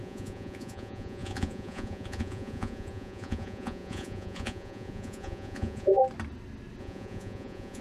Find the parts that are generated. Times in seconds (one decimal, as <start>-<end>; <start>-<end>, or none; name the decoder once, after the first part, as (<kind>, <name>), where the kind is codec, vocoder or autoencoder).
0.0-6.0 (vocoder, Vocos); 6.8-7.8

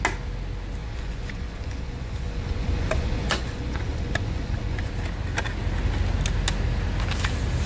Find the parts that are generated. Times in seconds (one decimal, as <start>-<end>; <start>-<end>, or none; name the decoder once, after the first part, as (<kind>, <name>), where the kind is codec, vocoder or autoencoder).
0.8-4.9 (vocoder, Vocos)

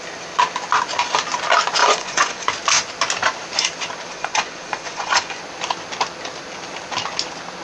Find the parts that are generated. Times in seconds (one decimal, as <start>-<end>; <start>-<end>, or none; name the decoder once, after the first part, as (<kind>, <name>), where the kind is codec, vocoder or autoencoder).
1.8-2.5 (vocoder, Vocos); 4.1-5.4

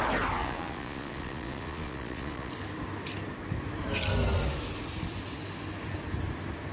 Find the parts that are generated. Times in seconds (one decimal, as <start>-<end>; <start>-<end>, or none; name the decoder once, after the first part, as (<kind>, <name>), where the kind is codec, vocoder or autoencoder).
0.4-2.5 (vocoder, Vocos)

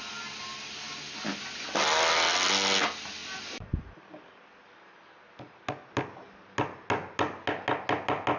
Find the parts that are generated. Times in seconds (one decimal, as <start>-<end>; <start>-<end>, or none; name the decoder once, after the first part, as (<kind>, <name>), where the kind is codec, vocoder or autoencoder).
none

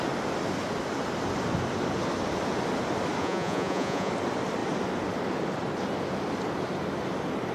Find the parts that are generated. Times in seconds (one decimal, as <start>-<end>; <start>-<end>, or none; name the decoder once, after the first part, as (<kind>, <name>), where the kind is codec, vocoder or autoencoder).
3.2-4.1 (vocoder, Vocos)

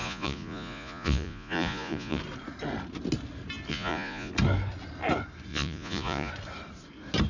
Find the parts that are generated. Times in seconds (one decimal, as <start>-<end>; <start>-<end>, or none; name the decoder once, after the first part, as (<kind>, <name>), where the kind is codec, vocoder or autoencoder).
0.0-2.2 (vocoder, Vocos); 3.7-4.3; 5.5-6.3